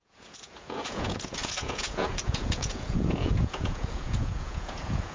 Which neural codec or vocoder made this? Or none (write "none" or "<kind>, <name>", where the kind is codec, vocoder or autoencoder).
vocoder, Vocos